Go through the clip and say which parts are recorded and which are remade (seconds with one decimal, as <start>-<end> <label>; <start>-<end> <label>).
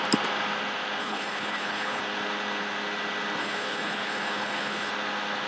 0.0-1.0 recorded; 1.0-2.0 remade; 2.0-3.4 recorded; 3.4-4.9 remade; 4.9-5.5 recorded